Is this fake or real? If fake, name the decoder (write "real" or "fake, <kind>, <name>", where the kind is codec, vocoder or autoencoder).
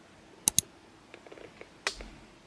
real